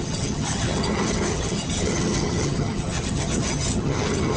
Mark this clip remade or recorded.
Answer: remade